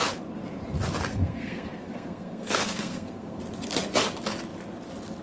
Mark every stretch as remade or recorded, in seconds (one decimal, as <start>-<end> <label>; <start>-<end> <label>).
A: 0.0-1.1 recorded; 1.1-3.4 remade; 3.4-5.2 recorded